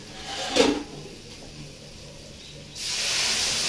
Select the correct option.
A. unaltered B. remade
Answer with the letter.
A